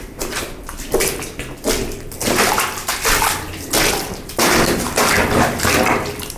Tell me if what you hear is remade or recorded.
recorded